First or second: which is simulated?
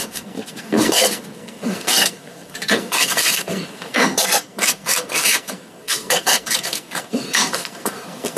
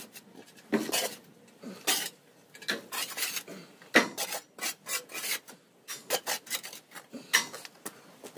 first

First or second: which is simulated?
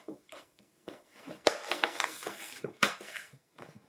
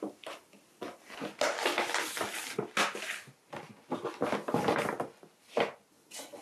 first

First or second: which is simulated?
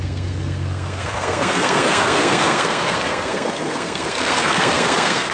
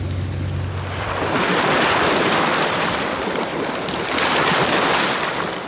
first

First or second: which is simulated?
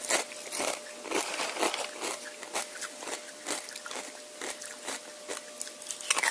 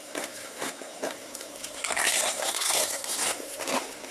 second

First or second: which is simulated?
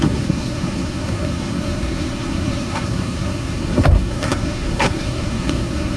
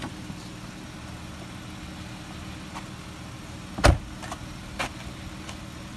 first